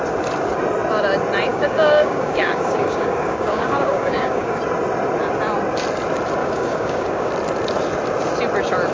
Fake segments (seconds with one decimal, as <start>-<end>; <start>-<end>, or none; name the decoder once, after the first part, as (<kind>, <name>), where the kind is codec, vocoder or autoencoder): 1.5-4.6 (codec, DAC); 6.4-7.3